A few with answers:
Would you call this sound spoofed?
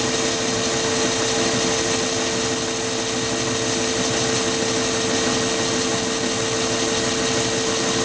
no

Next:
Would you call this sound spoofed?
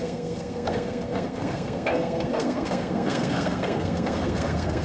yes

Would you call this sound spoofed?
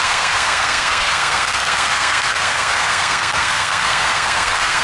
yes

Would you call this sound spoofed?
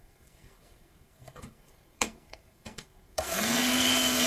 yes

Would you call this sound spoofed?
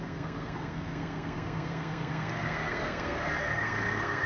yes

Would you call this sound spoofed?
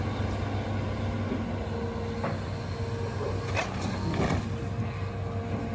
no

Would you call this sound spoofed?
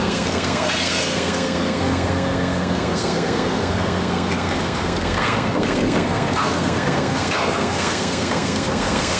yes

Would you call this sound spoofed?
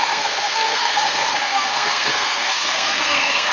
yes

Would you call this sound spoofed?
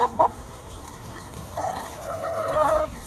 yes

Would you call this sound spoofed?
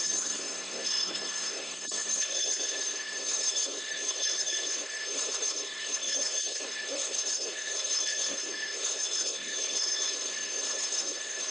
yes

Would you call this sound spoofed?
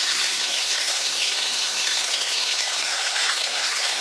yes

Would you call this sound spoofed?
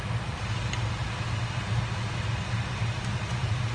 no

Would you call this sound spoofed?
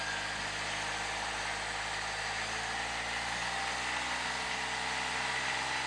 no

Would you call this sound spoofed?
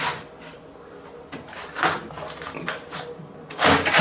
no